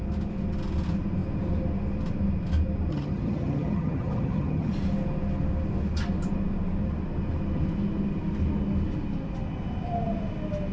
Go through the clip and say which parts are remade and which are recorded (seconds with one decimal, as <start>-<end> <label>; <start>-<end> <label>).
0.0-2.9 recorded; 2.9-4.7 remade; 4.7-10.7 recorded